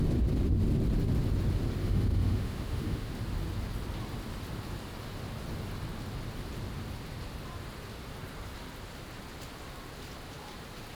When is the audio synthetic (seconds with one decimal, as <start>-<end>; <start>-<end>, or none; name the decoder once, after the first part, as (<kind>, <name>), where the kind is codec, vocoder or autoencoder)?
1.8-3.1 (autoencoder, DAC-VAE)